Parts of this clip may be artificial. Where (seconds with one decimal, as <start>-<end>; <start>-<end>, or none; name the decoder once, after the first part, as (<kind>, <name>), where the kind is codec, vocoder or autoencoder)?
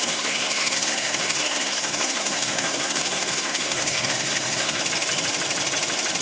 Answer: 0.0-4.8 (codec, SNAC)